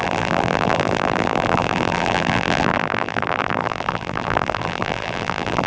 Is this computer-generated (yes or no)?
yes